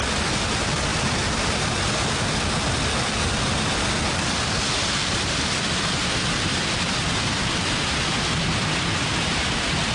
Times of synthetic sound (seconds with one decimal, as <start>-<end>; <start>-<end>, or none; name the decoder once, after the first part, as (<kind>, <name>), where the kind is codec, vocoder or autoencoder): none